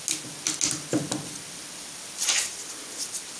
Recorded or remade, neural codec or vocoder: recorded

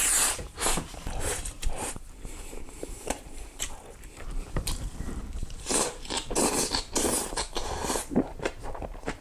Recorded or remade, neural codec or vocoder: remade, vocoder, BigVGAN v2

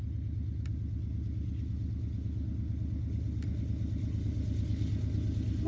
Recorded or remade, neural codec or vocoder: recorded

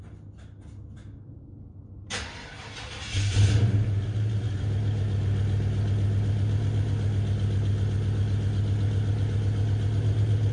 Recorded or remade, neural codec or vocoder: recorded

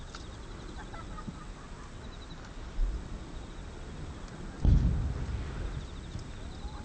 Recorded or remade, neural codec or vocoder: recorded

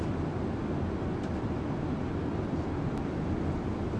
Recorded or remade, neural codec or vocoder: recorded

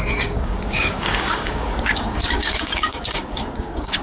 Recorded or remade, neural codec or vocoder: remade, codec, DAC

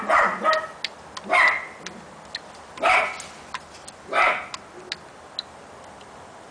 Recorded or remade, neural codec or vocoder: recorded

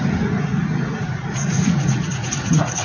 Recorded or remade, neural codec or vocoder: remade, vocoder, Vocos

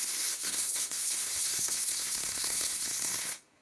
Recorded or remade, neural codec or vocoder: remade, codec, SNAC